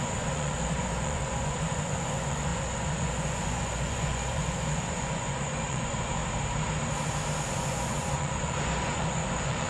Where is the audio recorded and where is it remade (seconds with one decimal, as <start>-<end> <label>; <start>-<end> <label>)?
0.0-6.2 remade; 6.2-7.5 recorded; 7.5-9.7 remade